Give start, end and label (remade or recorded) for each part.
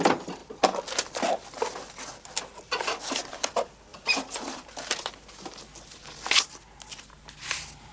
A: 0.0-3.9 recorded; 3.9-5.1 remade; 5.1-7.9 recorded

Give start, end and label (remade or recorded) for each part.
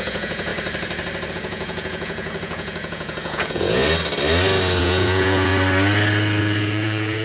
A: 0.0-0.5 remade; 0.5-1.3 recorded; 1.3-3.8 remade; 3.8-4.8 recorded; 4.8-5.5 remade; 5.5-6.4 recorded; 6.4-7.2 remade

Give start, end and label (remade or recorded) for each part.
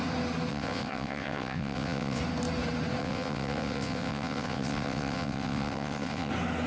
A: 0.0-0.5 recorded; 0.5-2.2 remade; 2.2-3.0 recorded; 3.0-6.3 remade; 6.3-6.7 recorded